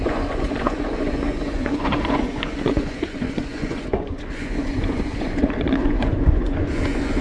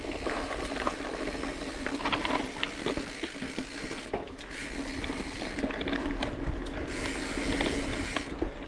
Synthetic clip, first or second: first